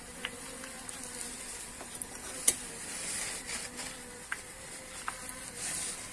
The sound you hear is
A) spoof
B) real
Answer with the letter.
B